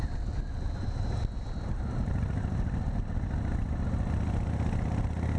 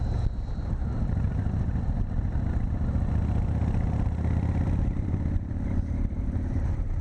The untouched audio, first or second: first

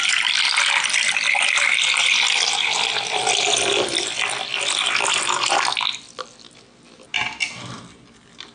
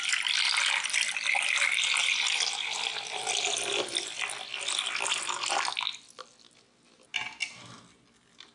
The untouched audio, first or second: second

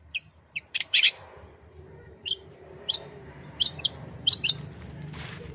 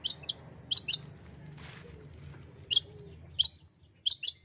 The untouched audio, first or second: second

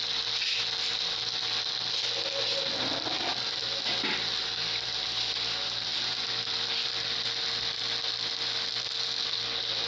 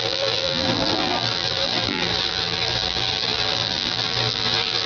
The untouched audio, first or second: first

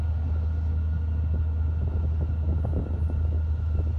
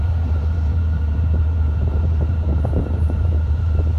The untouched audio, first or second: first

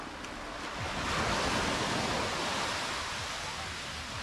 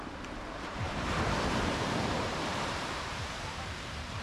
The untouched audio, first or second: first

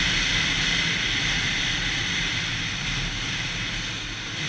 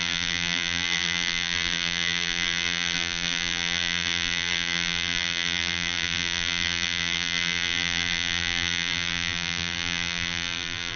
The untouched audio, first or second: first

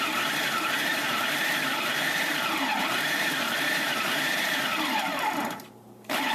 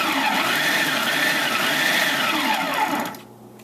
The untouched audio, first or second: second